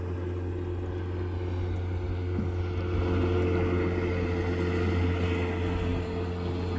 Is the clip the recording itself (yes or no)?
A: yes